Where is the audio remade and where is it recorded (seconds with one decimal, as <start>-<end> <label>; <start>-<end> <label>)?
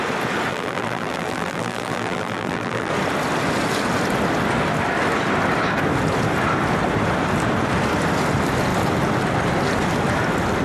0.0-0.5 recorded; 0.5-2.9 remade; 2.9-10.6 recorded